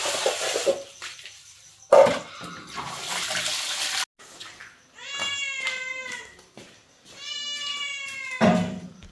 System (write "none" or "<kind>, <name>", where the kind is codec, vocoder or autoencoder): none